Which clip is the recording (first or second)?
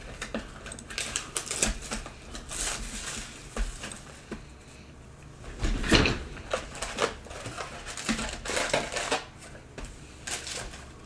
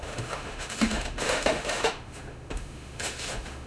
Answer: first